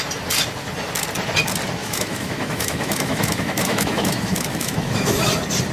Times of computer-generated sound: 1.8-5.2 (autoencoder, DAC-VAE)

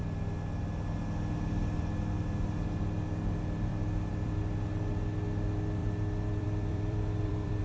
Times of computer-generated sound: 3.7-4.4 (vocoder, BigVGAN v2); 5.8-7.6

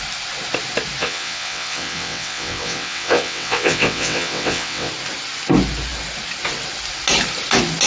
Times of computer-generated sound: 1.0-4.9 (vocoder, WaveNeXt)

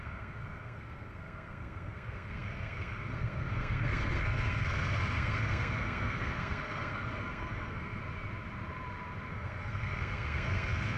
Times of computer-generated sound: 0.0-8.0 (codec, SNAC); 9.3-11.0

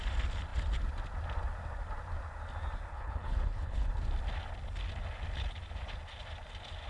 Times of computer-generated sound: 2.9-3.9 (codec, HILCodec)

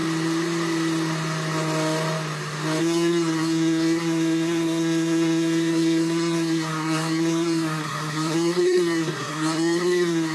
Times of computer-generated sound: 2.8-10.3 (codec, SNAC)

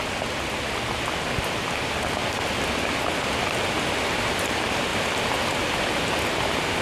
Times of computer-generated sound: 2.2-4.4 (vocoder, BigVGAN v2); 4.9-6.0

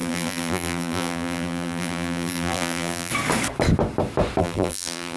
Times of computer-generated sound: 0.0-3.1 (vocoder, BigVGAN v2); 4.4-5.2